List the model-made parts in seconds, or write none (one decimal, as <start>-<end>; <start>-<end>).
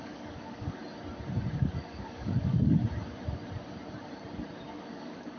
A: 0.0-0.8; 1.6-2.8; 4.7-5.4